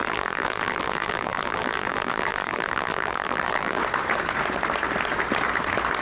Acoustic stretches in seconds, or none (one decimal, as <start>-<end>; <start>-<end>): 3.8-6.0